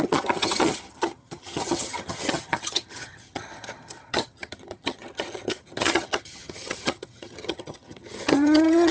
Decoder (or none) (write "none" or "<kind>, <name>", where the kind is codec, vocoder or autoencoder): vocoder, HiFi-GAN